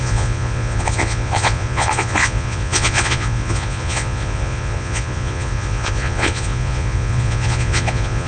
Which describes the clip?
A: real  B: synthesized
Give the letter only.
B